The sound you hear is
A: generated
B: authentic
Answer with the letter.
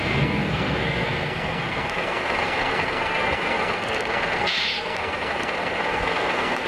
A